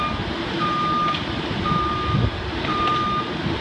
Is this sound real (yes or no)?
yes